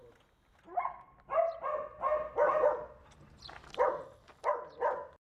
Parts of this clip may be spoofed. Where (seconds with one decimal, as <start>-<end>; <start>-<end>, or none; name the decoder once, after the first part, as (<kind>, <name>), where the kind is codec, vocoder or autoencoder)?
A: none